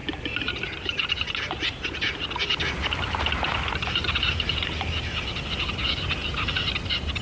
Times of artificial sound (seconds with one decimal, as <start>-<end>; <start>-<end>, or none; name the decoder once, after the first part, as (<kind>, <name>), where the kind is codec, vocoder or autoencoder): none